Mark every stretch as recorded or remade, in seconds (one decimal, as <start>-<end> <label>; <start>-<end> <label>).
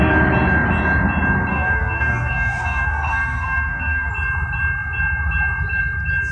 0.0-1.5 recorded; 1.5-4.1 remade; 4.1-6.3 recorded